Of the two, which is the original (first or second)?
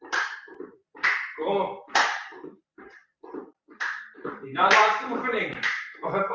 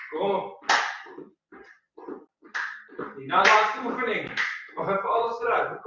second